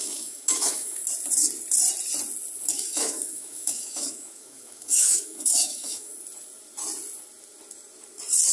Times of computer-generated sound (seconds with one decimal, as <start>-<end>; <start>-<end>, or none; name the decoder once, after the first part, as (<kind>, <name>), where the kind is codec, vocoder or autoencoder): 0.0-1.0 (autoencoder, DAC-VAE); 2.7-6.1